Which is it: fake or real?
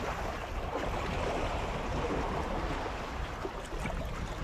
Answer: real